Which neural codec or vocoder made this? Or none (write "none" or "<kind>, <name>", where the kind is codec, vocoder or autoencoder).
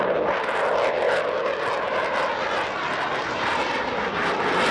none